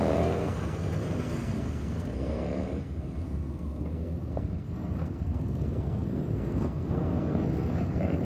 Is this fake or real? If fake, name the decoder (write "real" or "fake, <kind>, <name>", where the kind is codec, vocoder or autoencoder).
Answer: fake, codec, SNAC